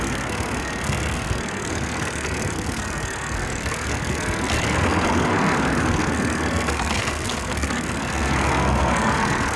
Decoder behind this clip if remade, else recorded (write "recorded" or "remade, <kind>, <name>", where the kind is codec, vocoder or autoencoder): remade, codec, SNAC